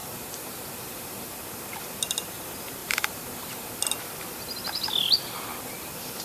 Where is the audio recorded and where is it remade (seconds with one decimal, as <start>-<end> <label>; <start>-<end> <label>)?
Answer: 0.0-1.2 remade; 1.2-2.8 recorded; 2.8-3.7 remade; 3.7-6.2 recorded